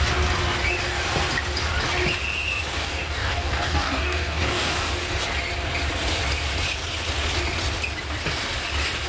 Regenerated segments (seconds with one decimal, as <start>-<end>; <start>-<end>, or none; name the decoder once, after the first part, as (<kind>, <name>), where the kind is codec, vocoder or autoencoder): 2.8-4.9 (codec, DAC)